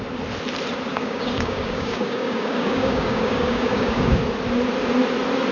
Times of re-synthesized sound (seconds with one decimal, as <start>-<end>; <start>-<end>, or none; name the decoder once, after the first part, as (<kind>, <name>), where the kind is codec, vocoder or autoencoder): 0.9-4.2 (codec, DAC)